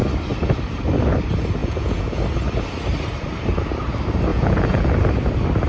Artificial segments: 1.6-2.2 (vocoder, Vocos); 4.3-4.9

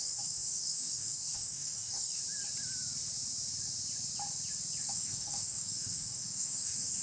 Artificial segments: 0.0-2.2 (codec, DAC); 4.8-7.0

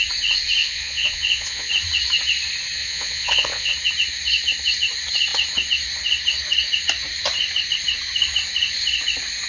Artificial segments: 0.6-1.7 (vocoder, Vocos); 2.8-3.7

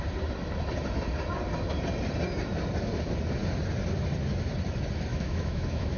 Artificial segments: 5.1-6.0 (autoencoder, DAC-VAE)

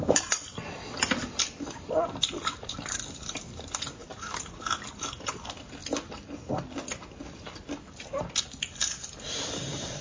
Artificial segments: 0.0-5.8 (vocoder, BigVGAN v2); 8.4-10.0

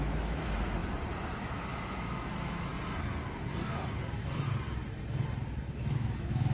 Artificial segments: 0.0-0.8 (autoencoder, DAC-VAE); 1.3-2.7; 5.7-6.5